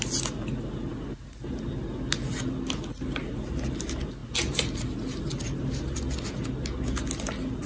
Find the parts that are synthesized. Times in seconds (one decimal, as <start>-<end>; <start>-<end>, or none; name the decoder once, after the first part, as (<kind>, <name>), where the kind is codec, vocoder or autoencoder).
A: none